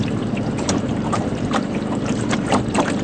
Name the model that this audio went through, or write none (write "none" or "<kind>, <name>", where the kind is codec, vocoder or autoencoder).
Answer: vocoder, BigVGAN v2